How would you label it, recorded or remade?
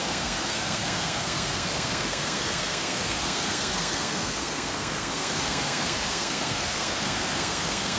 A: remade